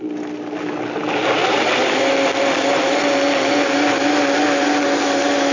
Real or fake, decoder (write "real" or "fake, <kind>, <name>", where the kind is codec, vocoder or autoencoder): real